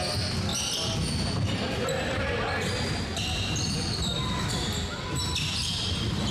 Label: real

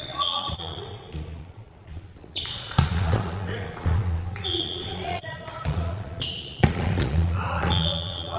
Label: fake